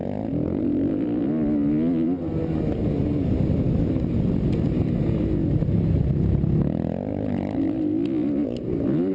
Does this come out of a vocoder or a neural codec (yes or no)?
no